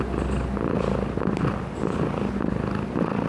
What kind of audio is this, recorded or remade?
recorded